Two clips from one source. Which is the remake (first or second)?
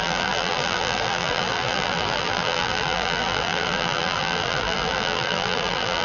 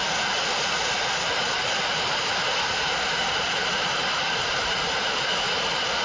first